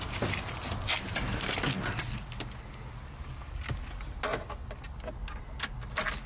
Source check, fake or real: real